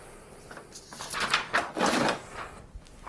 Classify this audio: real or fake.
real